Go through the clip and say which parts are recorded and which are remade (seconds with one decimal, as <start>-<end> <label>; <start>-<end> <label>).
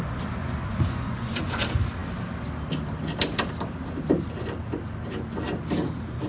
0.0-0.4 recorded; 0.4-1.6 remade; 1.6-6.3 recorded